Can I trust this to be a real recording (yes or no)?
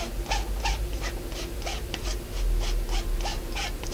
yes